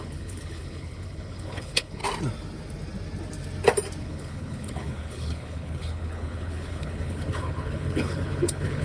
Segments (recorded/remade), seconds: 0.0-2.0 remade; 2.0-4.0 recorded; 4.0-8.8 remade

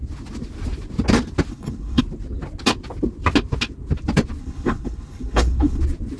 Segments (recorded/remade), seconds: 0.0-1.5 recorded; 1.5-2.0 remade; 2.0-4.4 recorded; 4.4-5.8 remade; 5.8-6.2 recorded

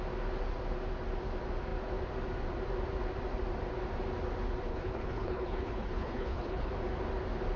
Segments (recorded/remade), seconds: 0.0-4.7 recorded; 4.7-6.7 remade; 6.7-7.6 recorded

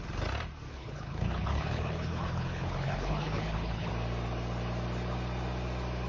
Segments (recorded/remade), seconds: 0.0-0.7 recorded; 0.7-3.9 remade; 3.9-6.1 recorded

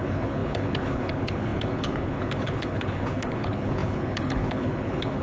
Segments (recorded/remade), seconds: 0.0-5.2 remade

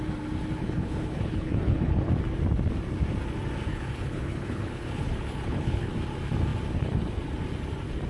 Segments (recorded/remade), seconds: 0.0-0.6 recorded; 0.6-2.1 remade; 2.1-3.7 recorded; 3.7-5.9 remade; 5.9-8.1 recorded

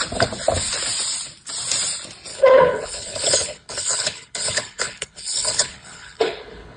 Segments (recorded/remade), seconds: 0.0-2.3 recorded; 2.3-6.8 remade

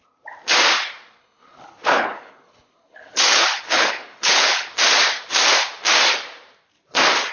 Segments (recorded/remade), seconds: 0.0-1.2 recorded; 1.2-4.7 remade; 4.7-7.3 recorded